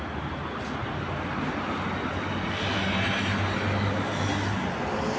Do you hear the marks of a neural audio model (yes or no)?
no